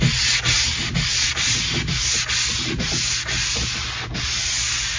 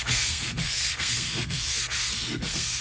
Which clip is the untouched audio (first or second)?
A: first